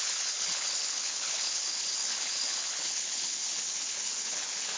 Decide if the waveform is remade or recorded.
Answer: remade